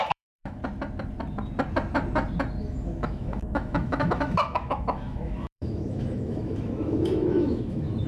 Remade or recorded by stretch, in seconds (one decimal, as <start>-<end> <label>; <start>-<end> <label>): 0.0-0.6 remade; 0.6-2.6 recorded; 2.6-8.1 remade